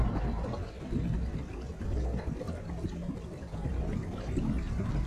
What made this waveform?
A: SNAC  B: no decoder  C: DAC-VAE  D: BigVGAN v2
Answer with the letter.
B